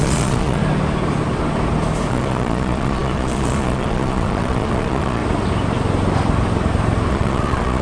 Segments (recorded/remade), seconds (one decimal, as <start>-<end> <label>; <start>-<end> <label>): 0.0-0.6 remade; 0.6-2.1 recorded; 2.1-5.2 remade; 5.2-7.1 recorded; 7.1-7.8 remade